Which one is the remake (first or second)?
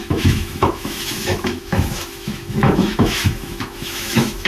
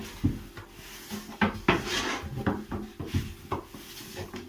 first